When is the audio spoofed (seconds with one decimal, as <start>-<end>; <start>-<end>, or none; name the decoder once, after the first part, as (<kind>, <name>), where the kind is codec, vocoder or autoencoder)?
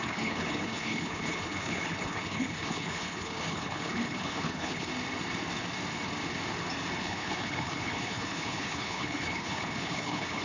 0.0-4.9 (codec, HILCodec); 7.0-10.4